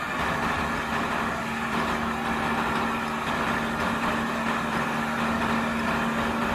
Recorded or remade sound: recorded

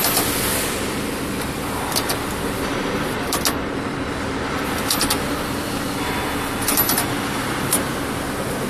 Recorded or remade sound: recorded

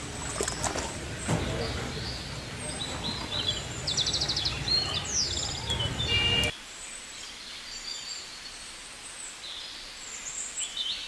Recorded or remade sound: recorded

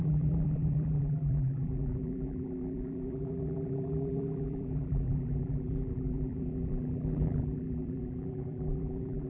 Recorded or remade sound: remade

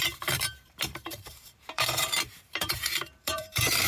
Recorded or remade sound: remade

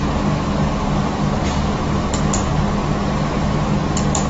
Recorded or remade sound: recorded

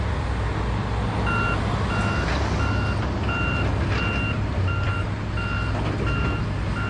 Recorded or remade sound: recorded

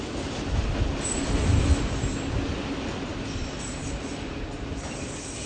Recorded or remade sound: recorded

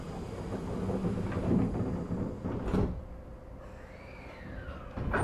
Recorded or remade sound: recorded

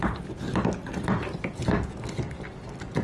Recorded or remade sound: recorded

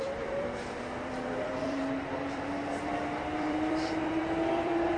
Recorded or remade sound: remade